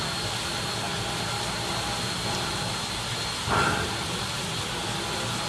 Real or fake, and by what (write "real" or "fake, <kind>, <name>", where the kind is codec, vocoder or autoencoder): real